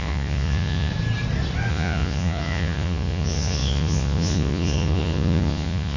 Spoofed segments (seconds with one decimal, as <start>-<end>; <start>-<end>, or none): 0.0-0.9; 1.7-6.0